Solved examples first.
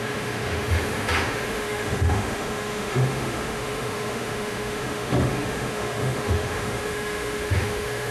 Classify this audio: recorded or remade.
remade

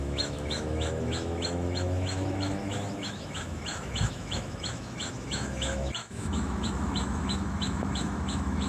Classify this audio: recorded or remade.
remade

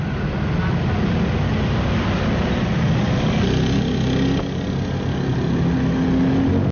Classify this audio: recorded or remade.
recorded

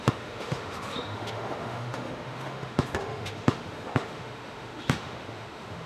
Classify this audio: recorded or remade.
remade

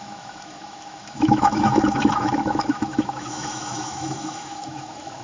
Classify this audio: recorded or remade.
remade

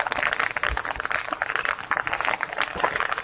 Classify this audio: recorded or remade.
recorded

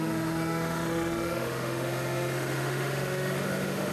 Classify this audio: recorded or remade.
remade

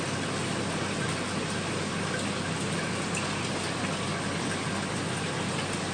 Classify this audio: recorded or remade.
recorded